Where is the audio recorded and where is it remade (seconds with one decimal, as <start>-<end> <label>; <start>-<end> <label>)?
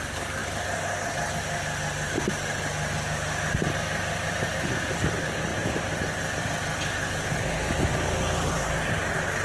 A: 0.0-9.4 recorded